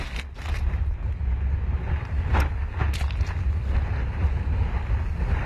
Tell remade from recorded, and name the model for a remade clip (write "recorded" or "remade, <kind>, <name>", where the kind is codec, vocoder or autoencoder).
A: recorded